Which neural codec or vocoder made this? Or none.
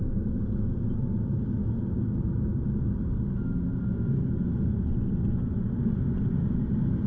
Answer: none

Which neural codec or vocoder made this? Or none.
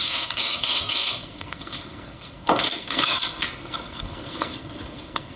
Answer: codec, SNAC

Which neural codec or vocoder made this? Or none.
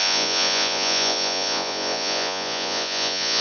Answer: vocoder, Vocos